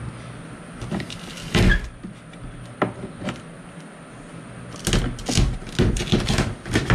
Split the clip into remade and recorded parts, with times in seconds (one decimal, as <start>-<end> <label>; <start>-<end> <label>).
0.0-6.9 recorded